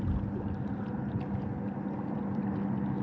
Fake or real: real